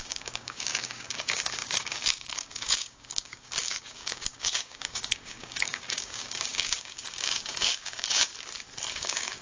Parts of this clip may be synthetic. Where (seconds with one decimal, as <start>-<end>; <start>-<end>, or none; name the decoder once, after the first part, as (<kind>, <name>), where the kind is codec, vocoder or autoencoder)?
0.0-8.3 (codec, DAC); 8.9-9.4